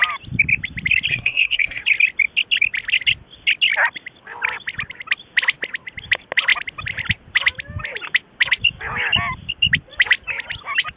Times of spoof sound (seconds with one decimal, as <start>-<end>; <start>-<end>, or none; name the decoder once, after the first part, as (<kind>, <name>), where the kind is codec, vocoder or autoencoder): 1.1-1.8 (codec, SNAC)